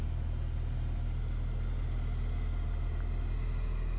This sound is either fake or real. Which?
real